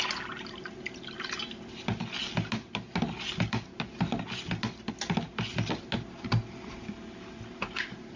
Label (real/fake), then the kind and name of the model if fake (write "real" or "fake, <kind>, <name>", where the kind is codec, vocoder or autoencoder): real